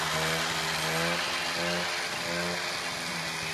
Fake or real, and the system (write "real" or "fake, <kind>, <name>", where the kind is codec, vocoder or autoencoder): real